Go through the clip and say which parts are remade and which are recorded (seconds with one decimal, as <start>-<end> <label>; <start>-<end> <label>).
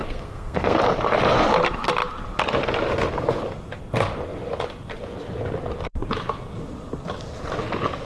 0.0-0.8 remade; 0.8-8.0 recorded